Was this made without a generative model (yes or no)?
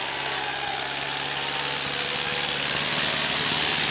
yes